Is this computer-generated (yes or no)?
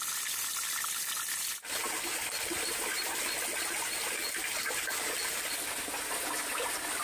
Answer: no